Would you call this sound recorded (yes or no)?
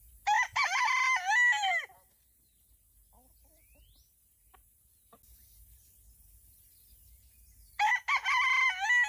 yes